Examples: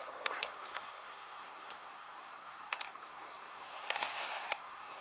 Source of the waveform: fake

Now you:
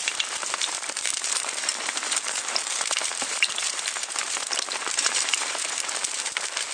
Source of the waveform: fake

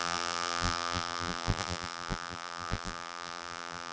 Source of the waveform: fake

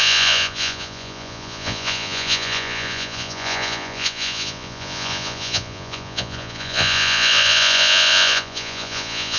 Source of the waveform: fake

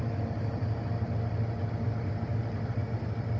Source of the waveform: real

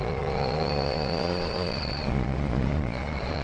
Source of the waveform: fake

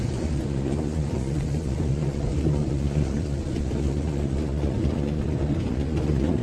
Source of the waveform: fake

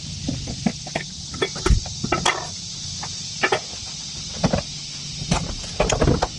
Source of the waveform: real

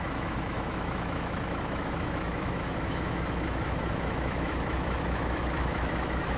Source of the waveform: fake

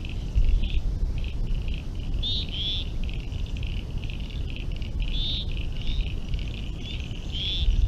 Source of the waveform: real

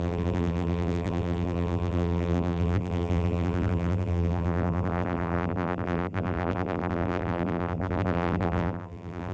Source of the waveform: fake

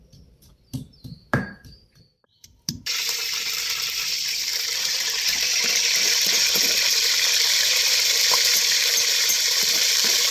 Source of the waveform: fake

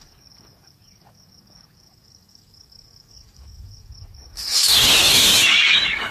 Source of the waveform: fake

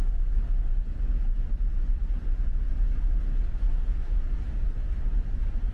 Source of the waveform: real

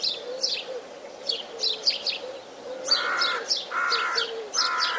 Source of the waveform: real